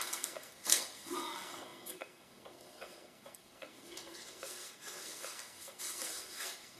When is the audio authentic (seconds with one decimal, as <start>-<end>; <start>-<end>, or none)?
none